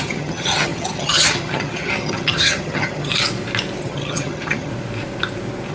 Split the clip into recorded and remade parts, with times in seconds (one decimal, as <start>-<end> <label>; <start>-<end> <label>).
0.0-3.1 remade; 3.1-3.8 recorded; 3.8-4.7 remade; 4.7-5.7 recorded